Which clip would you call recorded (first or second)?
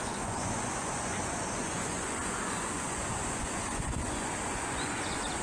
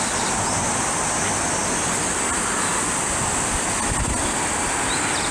second